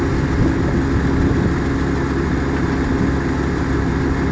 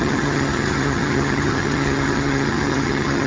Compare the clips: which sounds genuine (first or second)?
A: first